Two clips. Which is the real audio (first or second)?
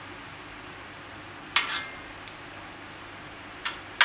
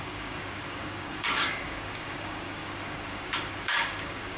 first